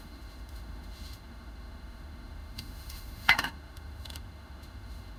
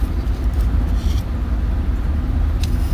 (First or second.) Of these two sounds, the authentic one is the second